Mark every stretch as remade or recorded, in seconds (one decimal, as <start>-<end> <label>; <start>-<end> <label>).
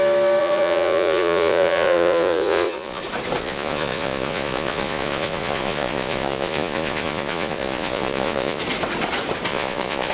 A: 0.0-0.4 recorded; 0.4-3.0 remade; 3.0-3.4 recorded; 3.4-8.6 remade; 8.6-9.5 recorded; 9.5-10.1 remade